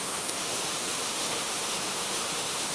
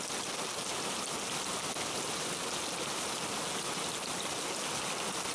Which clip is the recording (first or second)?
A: second